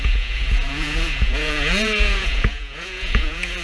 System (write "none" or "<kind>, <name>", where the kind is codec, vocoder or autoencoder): vocoder, Vocos